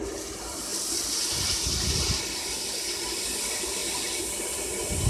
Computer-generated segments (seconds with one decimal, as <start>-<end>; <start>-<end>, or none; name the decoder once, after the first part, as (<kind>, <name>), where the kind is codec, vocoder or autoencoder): 0.0-0.7 (vocoder, BigVGAN v2); 3.4-5.1